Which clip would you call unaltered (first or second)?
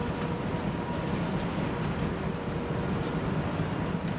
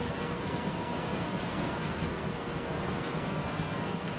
first